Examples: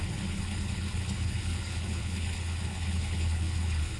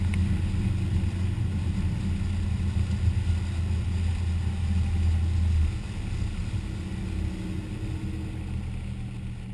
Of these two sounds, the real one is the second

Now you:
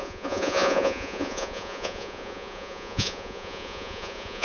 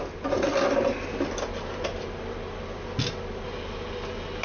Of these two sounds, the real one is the second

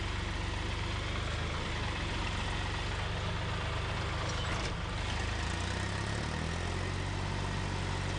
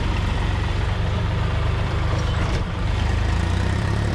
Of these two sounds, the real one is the first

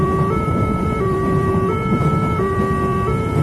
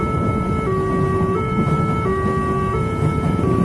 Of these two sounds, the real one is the second